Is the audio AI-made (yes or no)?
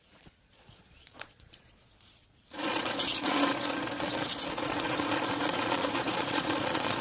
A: yes